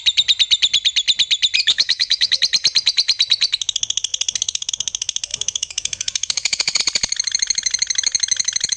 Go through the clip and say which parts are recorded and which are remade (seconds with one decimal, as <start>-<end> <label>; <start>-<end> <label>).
0.0-1.7 recorded; 1.7-2.4 remade; 2.4-5.3 recorded; 5.3-6.8 remade; 6.8-8.8 recorded